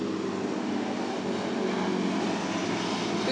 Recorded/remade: recorded